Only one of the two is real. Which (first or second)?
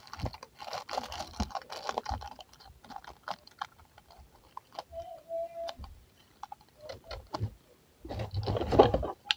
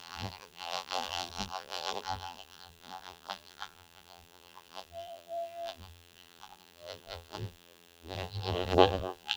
first